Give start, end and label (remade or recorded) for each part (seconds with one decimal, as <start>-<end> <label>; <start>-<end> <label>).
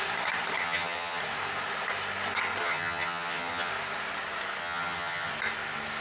0.0-0.6 recorded; 0.6-1.2 remade; 1.2-2.6 recorded; 2.6-3.7 remade; 3.7-4.6 recorded; 4.6-5.3 remade; 5.3-6.0 recorded